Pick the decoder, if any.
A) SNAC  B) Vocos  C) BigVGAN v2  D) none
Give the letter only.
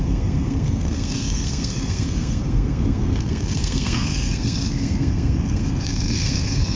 A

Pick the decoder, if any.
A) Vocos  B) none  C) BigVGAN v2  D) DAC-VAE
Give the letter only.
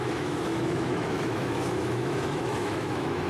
D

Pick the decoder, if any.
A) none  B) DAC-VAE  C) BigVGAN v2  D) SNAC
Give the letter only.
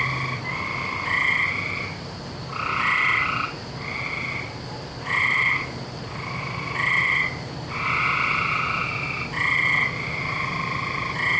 A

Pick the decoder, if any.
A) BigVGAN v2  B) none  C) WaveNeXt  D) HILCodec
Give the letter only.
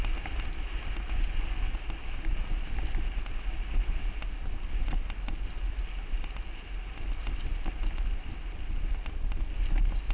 B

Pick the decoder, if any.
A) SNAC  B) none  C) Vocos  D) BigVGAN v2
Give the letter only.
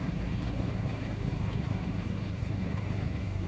A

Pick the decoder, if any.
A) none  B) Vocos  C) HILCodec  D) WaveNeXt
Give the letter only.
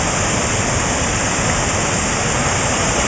A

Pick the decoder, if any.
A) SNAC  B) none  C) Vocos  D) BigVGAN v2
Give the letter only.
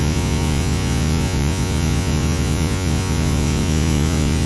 C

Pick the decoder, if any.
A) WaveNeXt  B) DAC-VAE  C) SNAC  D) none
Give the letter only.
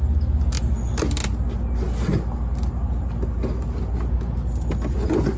D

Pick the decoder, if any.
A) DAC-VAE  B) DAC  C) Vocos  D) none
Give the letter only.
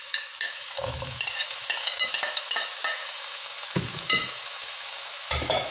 A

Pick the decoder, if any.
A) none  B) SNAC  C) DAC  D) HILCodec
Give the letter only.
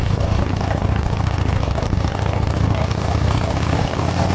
C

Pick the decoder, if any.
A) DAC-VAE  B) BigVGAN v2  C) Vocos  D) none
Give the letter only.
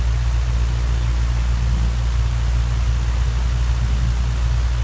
D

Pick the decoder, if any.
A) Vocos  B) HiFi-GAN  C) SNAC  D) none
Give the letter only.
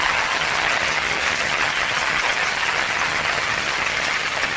B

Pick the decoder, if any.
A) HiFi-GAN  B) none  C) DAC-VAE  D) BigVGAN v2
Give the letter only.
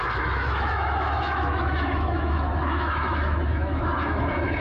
C